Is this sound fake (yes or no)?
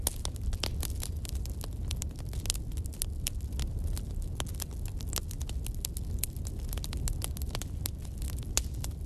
no